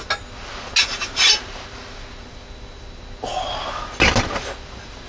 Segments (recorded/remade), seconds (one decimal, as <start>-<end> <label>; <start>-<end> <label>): 0.0-5.1 recorded